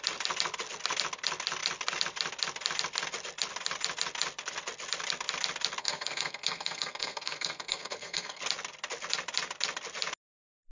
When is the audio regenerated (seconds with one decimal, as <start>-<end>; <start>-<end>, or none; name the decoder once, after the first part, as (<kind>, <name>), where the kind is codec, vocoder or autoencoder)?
5.8-8.4 (codec, SNAC)